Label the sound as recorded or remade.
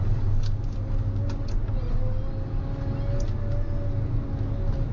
recorded